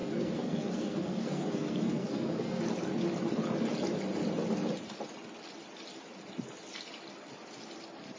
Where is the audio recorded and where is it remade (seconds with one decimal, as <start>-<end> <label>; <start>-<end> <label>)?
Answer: 0.0-2.6 remade; 2.6-8.2 recorded